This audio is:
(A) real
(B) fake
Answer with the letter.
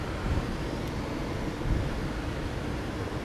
A